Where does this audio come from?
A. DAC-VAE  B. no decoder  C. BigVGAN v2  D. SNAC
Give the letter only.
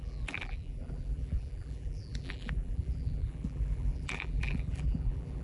C